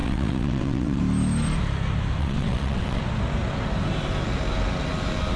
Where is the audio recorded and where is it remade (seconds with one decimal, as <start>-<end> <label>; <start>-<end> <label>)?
0.0-1.0 remade; 1.0-2.2 recorded; 2.2-3.0 remade; 3.0-5.4 recorded